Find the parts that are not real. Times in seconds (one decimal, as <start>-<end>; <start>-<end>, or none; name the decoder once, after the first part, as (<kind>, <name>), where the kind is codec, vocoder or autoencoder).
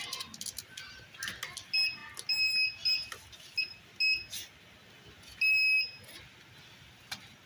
none